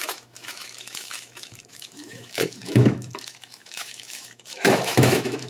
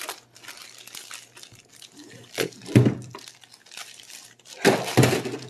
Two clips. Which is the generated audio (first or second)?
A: first